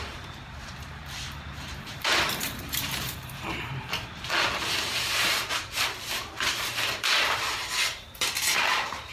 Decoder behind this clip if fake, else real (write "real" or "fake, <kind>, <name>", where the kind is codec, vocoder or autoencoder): fake, vocoder, BigVGAN v2